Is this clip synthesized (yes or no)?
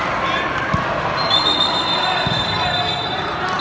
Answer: no